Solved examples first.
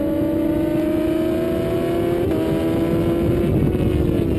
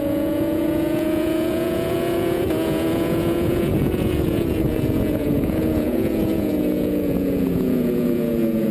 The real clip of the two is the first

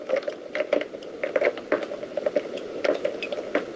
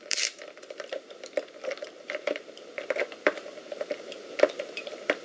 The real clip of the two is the first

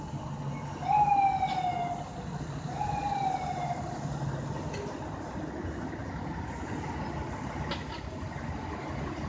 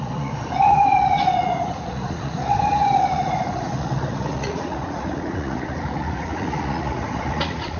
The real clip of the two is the first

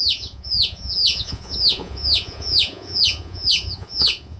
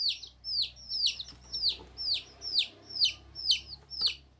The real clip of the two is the second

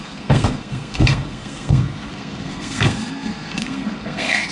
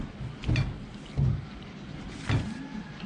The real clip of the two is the second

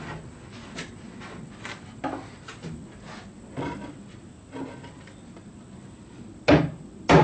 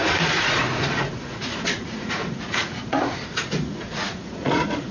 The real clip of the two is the first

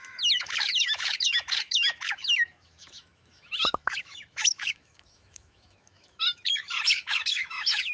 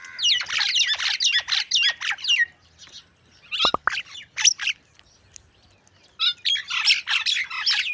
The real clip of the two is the second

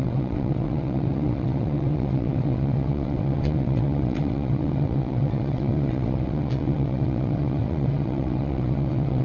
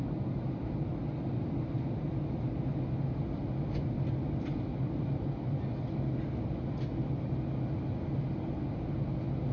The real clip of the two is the second